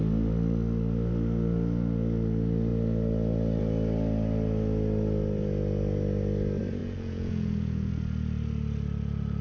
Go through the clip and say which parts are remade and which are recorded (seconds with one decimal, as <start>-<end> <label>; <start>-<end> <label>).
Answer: 0.0-6.8 recorded; 6.8-7.9 remade; 7.9-9.4 recorded